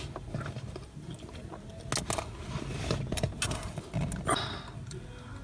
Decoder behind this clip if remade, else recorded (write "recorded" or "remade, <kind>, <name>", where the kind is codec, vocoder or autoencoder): recorded